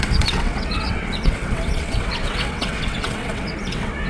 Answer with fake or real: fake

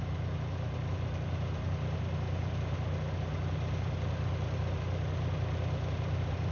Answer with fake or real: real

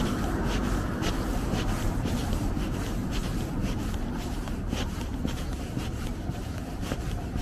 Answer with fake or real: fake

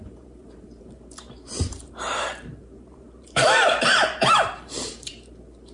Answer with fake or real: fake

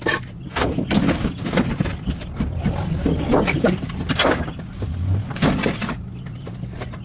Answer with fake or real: real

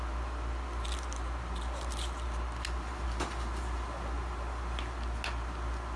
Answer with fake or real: real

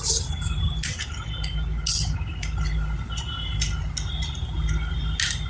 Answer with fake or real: real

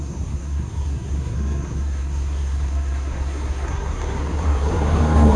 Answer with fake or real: fake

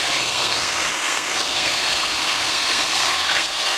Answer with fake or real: fake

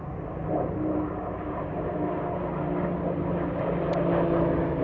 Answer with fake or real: real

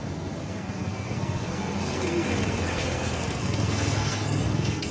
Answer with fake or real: fake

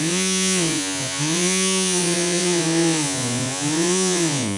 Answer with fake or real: fake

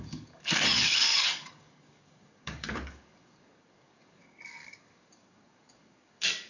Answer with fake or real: fake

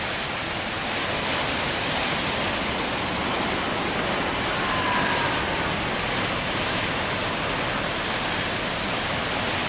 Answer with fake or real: real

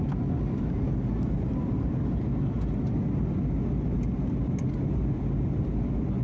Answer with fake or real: real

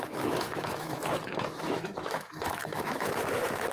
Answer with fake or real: fake